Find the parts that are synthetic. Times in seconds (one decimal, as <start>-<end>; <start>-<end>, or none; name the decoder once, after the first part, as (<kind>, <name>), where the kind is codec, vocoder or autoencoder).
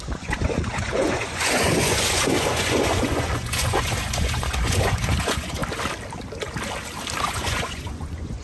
0.0-5.6 (vocoder, Vocos); 7.2-8.4